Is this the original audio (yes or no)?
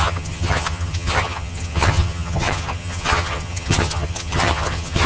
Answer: no